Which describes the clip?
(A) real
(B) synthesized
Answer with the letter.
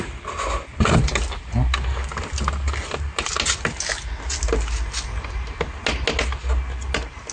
A